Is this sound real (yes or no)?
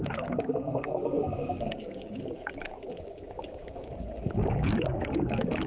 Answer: no